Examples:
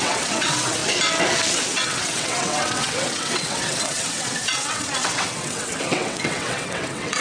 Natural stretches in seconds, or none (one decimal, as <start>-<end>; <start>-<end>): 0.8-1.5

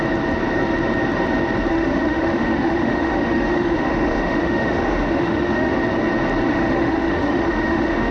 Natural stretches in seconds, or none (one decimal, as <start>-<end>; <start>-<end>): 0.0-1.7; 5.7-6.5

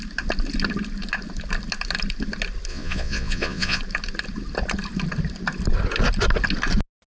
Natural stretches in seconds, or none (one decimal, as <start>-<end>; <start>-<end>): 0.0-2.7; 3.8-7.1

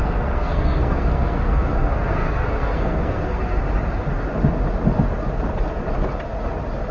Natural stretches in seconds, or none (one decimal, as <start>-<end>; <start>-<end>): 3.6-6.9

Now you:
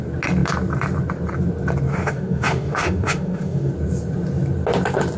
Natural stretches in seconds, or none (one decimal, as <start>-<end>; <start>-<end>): 0.0-1.9; 3.7-5.2

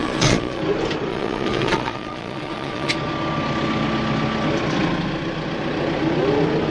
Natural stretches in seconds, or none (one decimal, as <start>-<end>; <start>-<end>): 0.6-1.1; 2.9-6.7

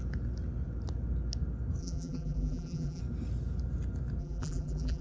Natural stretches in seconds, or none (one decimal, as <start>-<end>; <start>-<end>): 0.0-1.8; 3.0-4.2